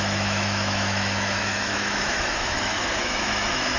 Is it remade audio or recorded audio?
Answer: remade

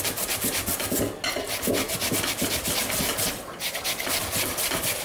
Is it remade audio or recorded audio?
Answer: recorded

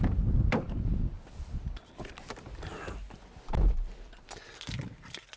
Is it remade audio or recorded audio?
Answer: recorded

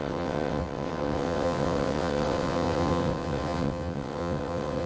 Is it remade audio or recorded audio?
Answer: remade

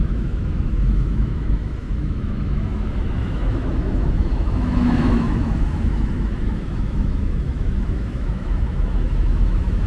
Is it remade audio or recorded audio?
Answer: remade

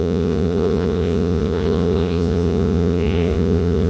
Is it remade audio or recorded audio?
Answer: remade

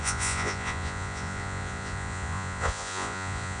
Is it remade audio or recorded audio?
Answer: remade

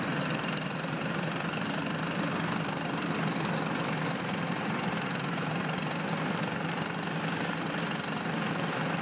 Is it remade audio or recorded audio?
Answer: remade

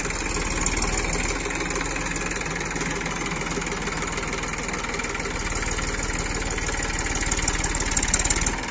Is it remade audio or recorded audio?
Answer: recorded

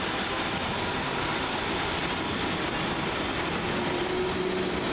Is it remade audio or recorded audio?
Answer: recorded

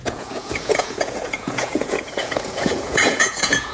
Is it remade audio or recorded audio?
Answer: remade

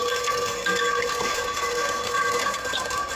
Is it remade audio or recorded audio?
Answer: remade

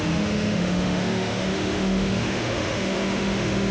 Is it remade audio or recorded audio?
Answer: remade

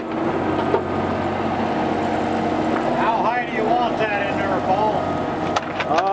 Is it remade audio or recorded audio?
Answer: recorded